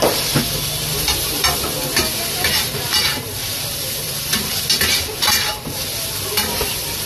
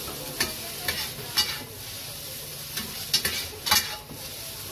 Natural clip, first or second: second